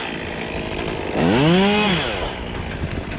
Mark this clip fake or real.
real